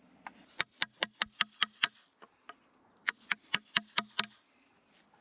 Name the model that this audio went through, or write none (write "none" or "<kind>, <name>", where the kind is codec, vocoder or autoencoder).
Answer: none